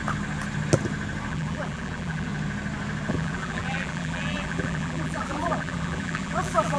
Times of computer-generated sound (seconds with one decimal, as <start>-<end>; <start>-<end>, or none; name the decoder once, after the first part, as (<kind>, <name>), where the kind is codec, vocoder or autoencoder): 1.3-2.3 (vocoder, BigVGAN v2); 3.1-6.8